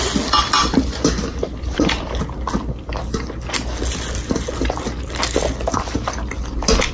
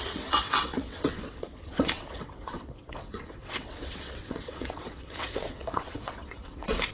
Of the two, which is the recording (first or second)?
first